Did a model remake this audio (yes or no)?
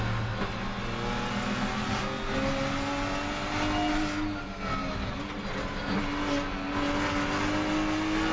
no